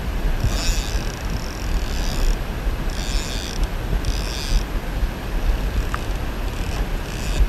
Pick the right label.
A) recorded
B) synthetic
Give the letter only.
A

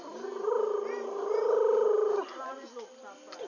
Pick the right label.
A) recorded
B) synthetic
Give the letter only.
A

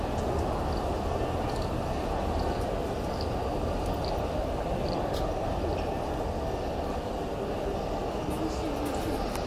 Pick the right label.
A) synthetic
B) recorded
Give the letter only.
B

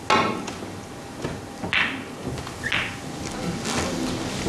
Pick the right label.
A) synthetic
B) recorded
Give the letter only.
B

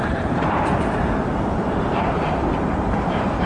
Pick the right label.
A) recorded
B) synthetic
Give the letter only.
B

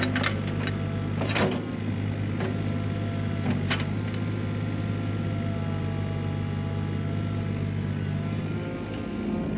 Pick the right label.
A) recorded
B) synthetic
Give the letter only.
A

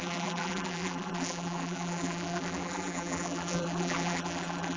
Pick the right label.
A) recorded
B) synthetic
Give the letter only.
B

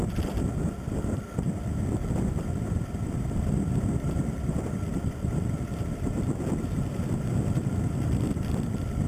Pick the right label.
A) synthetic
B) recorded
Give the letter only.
A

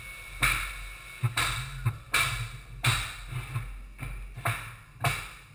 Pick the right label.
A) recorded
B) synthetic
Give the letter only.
A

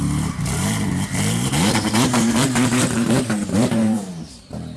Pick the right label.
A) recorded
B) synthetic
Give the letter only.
B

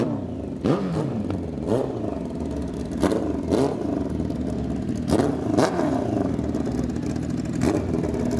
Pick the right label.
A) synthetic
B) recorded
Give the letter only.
A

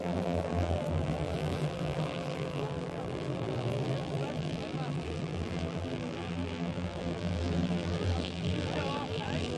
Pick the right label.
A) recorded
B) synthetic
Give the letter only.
B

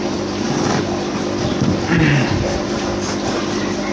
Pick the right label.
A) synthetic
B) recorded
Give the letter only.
B